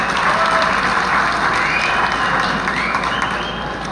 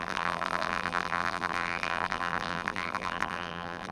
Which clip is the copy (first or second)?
second